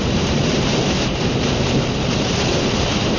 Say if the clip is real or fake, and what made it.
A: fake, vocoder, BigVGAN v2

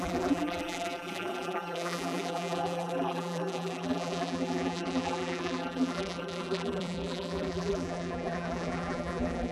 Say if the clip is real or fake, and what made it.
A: fake, vocoder, BigVGAN v2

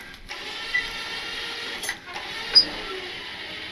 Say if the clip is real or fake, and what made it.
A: real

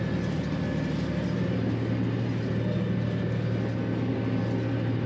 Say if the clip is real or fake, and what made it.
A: real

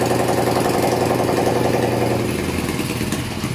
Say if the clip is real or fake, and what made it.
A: real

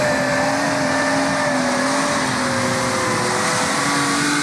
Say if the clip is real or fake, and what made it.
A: real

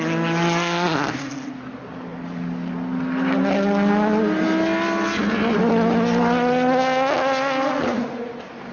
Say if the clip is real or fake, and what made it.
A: real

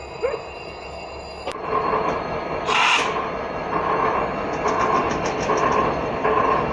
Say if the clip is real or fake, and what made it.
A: real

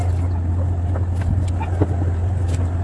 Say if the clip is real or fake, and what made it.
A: real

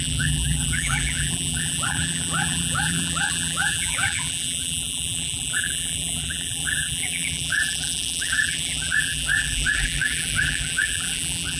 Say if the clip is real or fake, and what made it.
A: fake, vocoder, BigVGAN v2